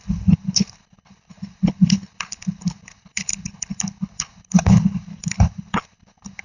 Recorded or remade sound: remade